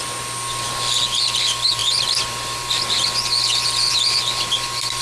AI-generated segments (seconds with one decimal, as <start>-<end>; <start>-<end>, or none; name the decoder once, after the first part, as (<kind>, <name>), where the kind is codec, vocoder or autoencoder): none